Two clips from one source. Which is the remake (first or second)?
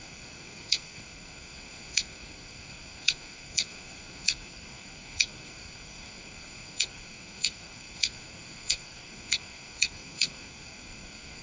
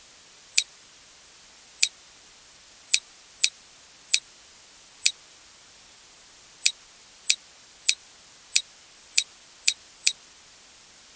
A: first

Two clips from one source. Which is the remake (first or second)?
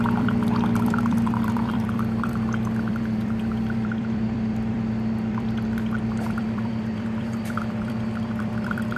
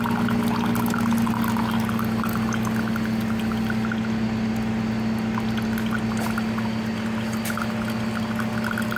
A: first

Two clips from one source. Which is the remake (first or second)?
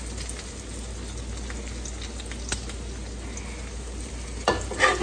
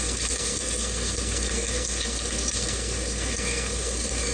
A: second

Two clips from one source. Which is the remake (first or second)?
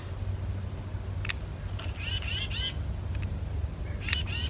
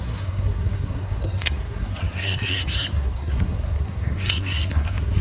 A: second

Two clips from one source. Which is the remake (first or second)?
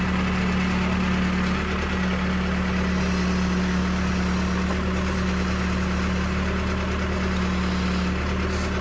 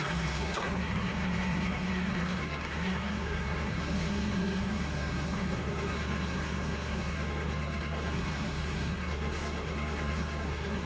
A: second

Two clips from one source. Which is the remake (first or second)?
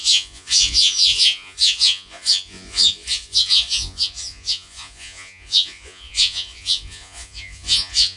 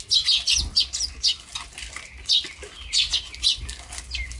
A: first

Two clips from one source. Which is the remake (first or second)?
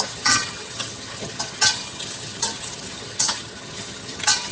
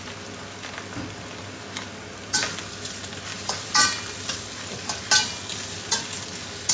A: first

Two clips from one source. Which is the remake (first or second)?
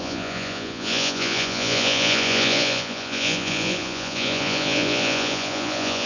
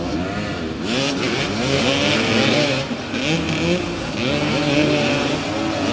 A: first